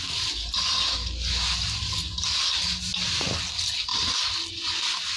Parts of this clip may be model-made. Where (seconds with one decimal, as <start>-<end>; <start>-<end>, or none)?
3.9-4.5